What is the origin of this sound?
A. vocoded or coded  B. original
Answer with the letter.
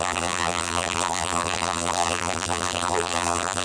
A